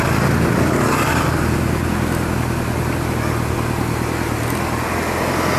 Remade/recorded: recorded